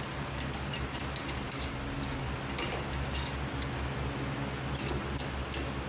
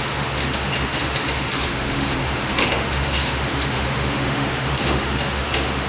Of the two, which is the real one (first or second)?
first